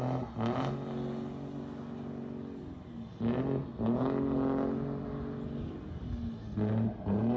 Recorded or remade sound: recorded